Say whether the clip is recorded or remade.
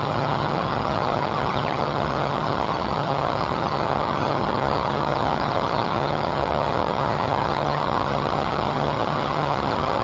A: remade